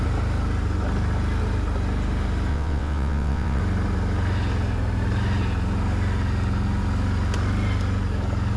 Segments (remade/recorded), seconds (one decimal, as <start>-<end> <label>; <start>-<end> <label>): 0.0-2.5 recorded; 2.5-3.6 remade; 3.6-8.6 recorded